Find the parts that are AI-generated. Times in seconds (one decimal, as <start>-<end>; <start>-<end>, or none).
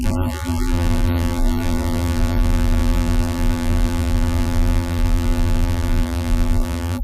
0.0-7.0